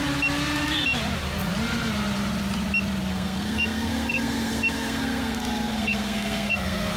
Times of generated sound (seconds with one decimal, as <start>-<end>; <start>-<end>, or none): 3.1-7.0